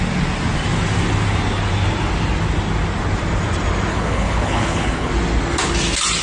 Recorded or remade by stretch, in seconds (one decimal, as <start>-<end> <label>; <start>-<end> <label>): 0.0-3.9 recorded; 3.9-5.1 remade; 5.1-6.2 recorded